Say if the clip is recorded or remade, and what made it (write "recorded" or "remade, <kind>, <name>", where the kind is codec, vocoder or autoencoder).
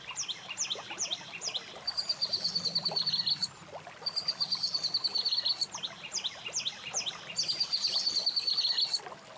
recorded